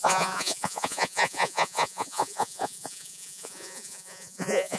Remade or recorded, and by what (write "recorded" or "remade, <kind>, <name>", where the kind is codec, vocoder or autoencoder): remade, vocoder, Vocos